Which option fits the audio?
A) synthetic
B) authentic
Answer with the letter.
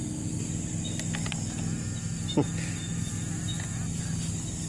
B